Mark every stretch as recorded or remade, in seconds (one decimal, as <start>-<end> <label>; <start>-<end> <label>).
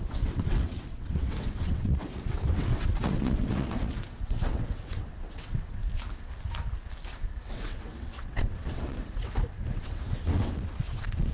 0.0-5.8 remade; 5.8-7.5 recorded; 7.5-11.3 remade